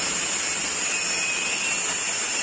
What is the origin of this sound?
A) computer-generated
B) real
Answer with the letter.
B